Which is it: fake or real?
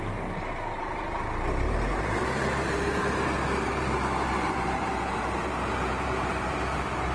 fake